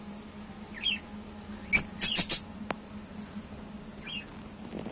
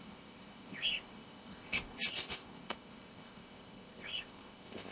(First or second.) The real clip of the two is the first